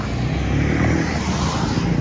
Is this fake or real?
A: real